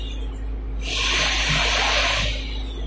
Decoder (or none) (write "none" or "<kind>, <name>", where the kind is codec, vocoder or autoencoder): none